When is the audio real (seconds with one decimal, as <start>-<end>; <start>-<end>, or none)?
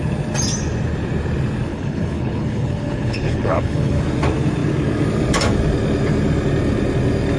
0.0-1.7; 4.0-7.4